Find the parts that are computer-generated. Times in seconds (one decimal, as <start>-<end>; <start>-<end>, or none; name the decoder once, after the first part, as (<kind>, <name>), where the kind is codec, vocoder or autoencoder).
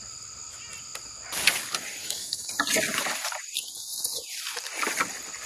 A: 2.0-2.5 (autoencoder, DAC-VAE)